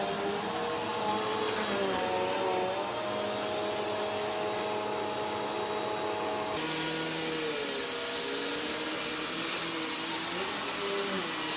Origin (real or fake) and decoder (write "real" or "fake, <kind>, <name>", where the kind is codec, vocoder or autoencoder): real